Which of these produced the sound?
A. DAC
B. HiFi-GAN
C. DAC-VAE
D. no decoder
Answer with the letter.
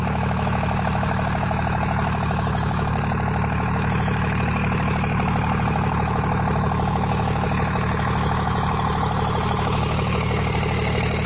C